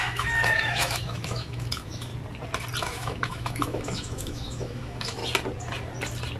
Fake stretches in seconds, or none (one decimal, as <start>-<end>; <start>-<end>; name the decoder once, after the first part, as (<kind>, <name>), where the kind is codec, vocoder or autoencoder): 0.0-2.1 (autoencoder, DAC-VAE); 2.8-5.2